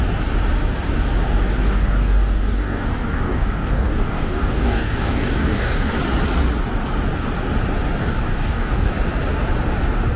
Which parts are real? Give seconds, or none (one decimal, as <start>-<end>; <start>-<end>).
0.0-1.7; 5.9-8.0; 8.9-10.2